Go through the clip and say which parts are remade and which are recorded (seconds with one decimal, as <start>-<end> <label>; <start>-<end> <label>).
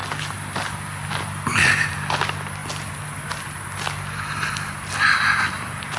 0.0-6.0 recorded